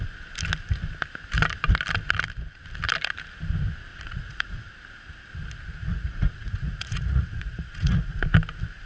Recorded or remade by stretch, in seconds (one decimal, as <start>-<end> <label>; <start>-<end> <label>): 0.0-3.9 recorded; 3.9-4.7 remade; 4.7-5.8 recorded; 5.8-8.2 remade; 8.2-8.9 recorded